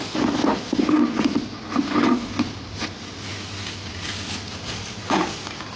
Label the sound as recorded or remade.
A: recorded